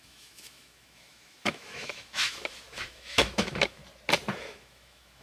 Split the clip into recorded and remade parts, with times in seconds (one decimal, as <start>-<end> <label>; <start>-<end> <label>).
0.0-3.8 remade; 3.8-4.4 recorded; 4.4-5.2 remade